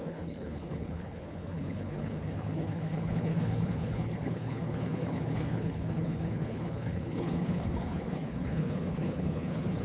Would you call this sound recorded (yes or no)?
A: no